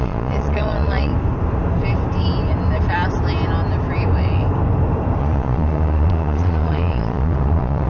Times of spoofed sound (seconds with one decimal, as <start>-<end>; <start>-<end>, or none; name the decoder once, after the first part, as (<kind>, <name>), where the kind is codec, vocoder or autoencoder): 0.0-1.1 (vocoder, Vocos); 5.2-7.9